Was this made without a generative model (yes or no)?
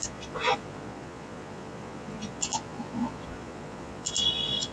no